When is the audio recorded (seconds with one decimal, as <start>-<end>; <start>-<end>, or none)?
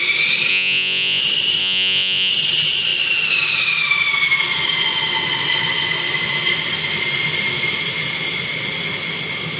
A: 0.0-0.5; 1.2-1.6; 2.3-9.6